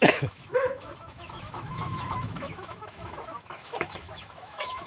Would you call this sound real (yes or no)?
no